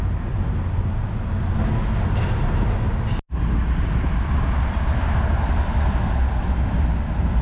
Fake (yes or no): no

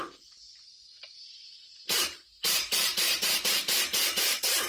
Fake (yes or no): yes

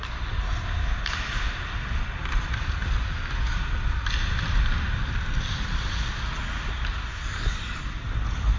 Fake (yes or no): no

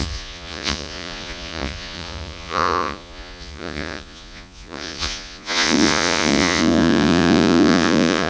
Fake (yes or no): yes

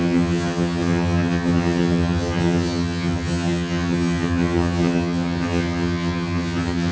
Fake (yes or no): yes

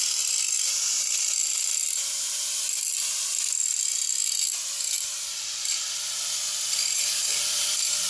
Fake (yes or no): no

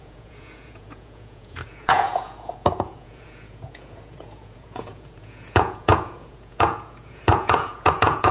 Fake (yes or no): yes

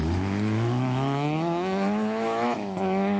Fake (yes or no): yes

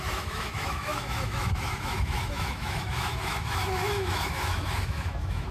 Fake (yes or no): yes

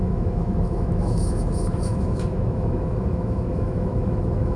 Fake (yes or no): yes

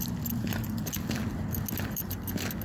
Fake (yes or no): no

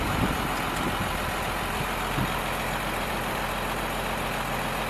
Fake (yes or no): yes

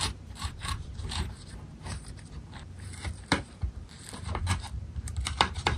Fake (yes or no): yes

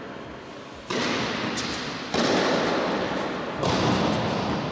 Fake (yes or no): no